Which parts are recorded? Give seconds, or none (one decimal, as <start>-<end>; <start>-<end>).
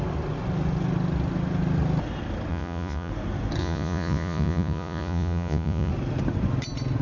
0.0-2.5; 3.1-3.6; 5.9-7.0